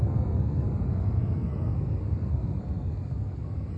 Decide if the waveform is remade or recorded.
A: remade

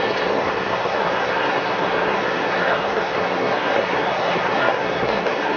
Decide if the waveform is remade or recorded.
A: remade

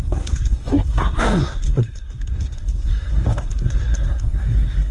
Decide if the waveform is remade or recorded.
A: remade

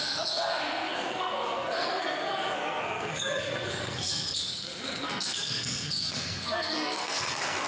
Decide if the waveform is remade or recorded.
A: remade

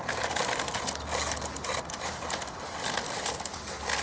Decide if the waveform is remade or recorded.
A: recorded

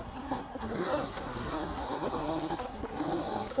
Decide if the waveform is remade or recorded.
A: remade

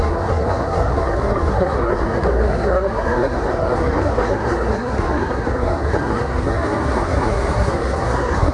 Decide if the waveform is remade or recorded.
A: remade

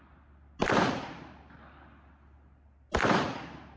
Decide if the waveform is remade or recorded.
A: recorded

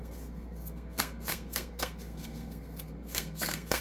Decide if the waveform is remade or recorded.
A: remade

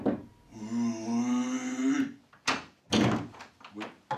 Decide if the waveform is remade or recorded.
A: recorded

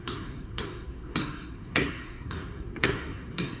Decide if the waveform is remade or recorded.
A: remade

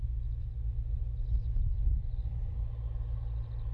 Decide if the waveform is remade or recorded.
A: recorded